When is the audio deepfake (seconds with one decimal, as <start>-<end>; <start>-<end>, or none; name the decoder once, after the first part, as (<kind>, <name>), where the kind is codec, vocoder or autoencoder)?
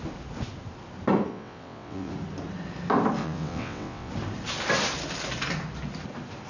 1.3-2.1 (vocoder, WaveNeXt); 3.2-4.1